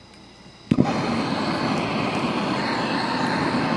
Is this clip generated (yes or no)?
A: no